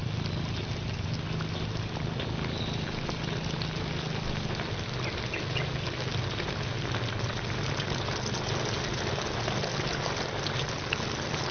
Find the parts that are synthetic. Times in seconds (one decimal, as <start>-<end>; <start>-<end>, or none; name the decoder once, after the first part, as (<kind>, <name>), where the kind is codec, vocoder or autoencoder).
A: none